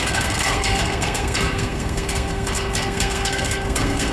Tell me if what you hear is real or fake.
fake